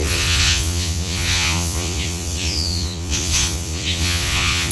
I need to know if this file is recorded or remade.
remade